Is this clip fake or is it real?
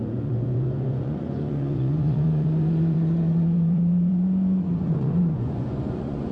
fake